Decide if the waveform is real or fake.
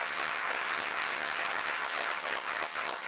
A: fake